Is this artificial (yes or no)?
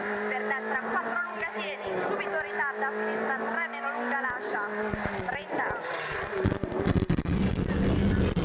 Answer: no